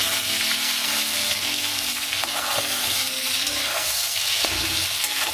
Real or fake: fake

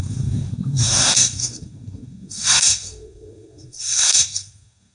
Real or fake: fake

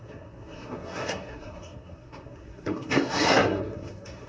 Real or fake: fake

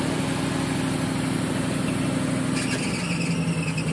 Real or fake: real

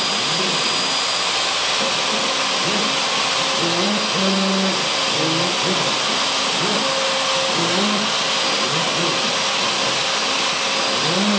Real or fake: real